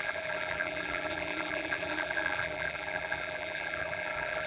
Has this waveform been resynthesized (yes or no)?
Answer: yes